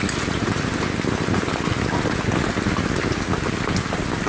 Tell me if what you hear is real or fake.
real